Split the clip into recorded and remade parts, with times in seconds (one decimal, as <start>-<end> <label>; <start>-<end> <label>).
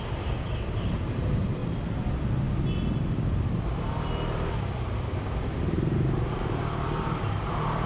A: 0.0-1.6 remade; 1.6-6.3 recorded; 6.3-7.9 remade